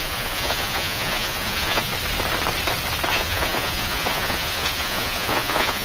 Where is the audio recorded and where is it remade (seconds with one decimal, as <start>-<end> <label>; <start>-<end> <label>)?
0.0-1.9 remade; 1.9-3.1 recorded; 3.1-5.8 remade